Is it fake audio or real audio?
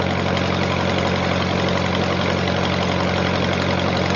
real